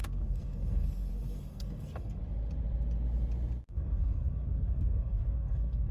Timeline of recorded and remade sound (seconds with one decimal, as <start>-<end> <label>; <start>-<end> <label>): 0.0-2.2 remade; 2.2-3.7 recorded; 3.7-5.9 remade